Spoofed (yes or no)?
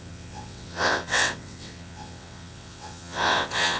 yes